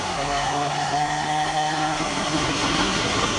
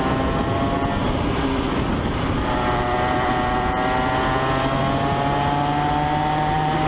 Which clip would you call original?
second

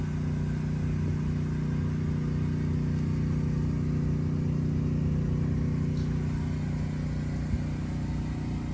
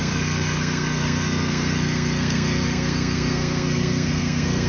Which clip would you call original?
first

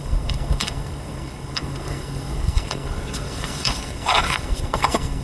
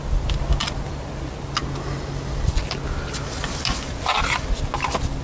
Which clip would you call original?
second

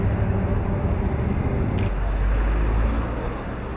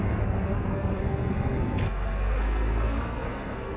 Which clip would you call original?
first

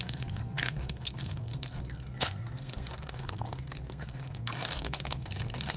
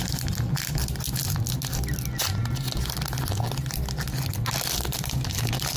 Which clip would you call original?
second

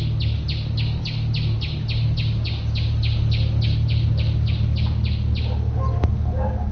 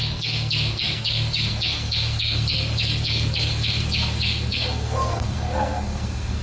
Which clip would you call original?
first